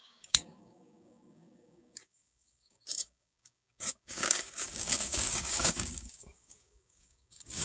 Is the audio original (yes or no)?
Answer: no